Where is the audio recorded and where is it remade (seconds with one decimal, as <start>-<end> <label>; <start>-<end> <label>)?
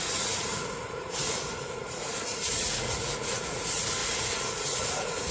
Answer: 0.0-5.3 remade